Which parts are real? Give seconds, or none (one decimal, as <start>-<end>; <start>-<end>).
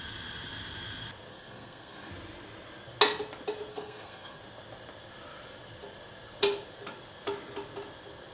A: 0.0-1.3; 2.1-3.7; 4.4-8.3